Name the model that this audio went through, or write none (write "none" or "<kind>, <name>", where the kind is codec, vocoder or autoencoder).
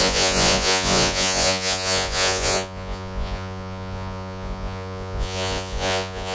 vocoder, Vocos